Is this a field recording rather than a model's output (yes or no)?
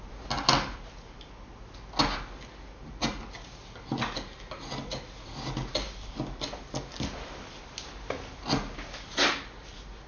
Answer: yes